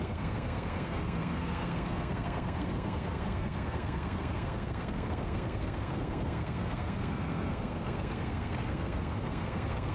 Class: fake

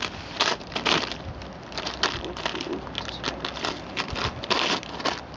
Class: real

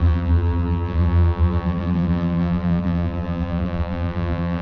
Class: fake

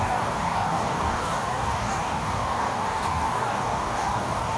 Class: fake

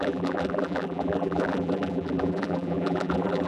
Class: fake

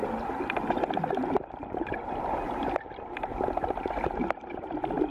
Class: real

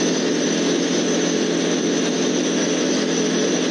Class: real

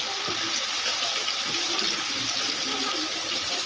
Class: real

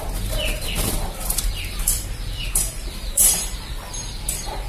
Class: fake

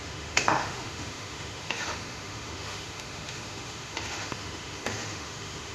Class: fake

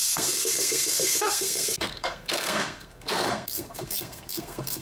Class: fake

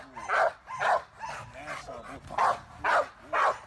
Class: real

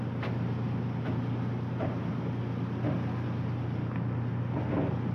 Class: real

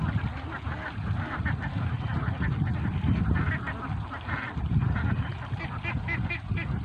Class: real